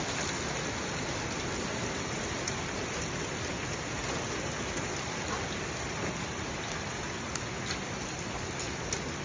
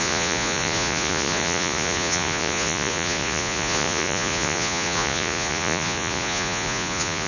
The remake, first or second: second